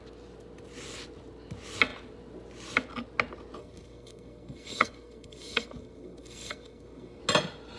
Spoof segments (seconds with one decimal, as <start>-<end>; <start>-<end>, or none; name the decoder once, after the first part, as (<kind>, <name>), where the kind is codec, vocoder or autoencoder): 3.6-7.2 (codec, SNAC)